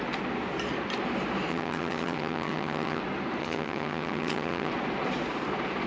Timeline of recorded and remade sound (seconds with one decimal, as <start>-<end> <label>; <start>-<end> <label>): 0.0-1.5 recorded; 1.5-3.0 remade; 3.0-3.4 recorded; 3.4-4.7 remade; 4.7-5.9 recorded